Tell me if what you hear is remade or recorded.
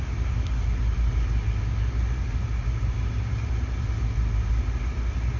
recorded